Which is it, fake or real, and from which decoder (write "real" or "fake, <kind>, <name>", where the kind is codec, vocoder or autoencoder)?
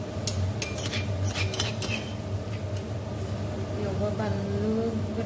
real